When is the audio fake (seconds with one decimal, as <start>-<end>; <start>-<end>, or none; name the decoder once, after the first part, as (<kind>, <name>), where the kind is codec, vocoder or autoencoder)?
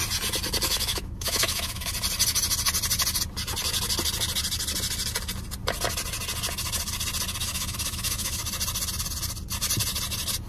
0.7-1.9 (autoencoder, DAC-VAE); 7.4-8.4